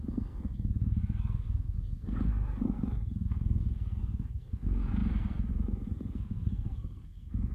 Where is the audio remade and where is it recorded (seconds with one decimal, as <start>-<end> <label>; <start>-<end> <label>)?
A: 0.0-7.5 remade